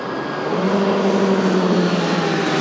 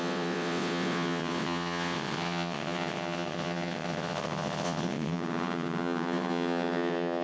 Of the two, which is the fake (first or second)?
second